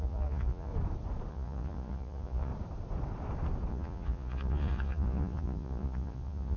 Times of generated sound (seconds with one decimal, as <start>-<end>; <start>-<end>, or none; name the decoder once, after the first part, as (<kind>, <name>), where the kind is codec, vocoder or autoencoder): 0.0-0.7 (vocoder, Vocos); 1.3-2.5; 3.7-6.6